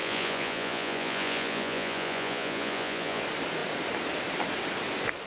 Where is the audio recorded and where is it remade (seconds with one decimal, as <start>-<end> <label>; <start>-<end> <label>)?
0.0-3.2 remade; 3.2-5.3 recorded